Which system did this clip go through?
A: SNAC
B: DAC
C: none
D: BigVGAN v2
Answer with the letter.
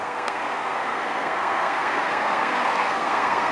A